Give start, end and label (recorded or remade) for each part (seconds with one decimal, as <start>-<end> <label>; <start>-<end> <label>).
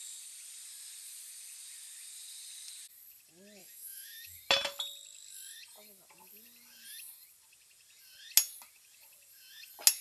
0.0-3.6 recorded; 3.6-4.4 remade; 4.4-10.0 recorded